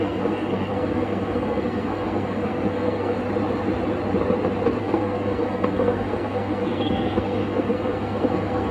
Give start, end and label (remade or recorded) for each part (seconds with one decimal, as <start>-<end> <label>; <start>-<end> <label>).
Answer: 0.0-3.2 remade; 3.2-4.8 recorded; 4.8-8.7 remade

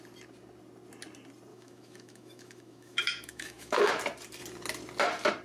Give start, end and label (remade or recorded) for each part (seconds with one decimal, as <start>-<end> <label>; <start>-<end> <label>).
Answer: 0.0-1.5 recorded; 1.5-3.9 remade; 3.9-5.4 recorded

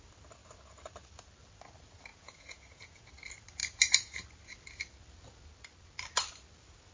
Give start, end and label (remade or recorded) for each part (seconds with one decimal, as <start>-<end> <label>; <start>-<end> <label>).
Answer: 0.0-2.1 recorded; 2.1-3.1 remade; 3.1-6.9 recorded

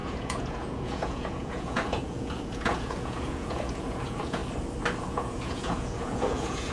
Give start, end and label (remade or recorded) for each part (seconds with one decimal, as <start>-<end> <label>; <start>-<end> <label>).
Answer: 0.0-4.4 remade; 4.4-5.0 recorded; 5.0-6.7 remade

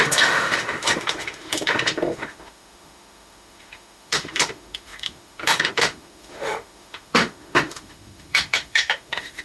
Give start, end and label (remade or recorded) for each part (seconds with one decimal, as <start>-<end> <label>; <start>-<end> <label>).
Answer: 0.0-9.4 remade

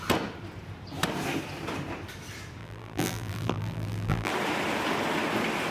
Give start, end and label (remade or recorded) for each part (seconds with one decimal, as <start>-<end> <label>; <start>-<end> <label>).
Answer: 0.0-2.6 recorded; 2.6-4.3 remade; 4.3-5.7 recorded

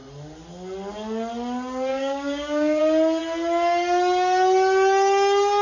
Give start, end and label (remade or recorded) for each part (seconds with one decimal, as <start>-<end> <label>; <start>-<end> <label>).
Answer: 0.0-1.9 recorded; 1.9-2.8 remade; 2.8-5.6 recorded